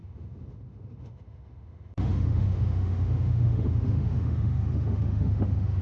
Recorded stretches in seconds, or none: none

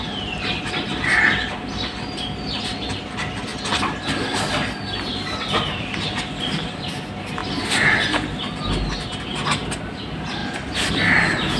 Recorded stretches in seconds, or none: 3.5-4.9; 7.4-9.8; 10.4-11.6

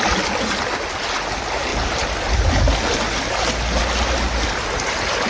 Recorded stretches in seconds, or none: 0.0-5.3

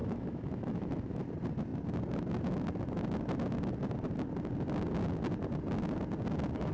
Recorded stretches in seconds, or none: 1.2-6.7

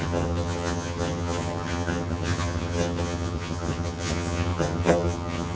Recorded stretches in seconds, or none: none

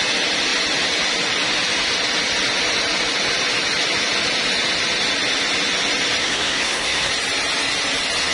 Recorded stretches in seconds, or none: 0.0-6.2; 7.1-8.3

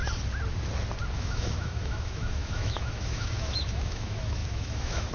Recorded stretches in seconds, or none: 0.0-1.1